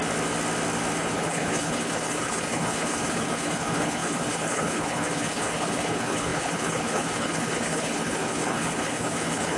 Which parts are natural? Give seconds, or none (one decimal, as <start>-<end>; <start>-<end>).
0.0-1.0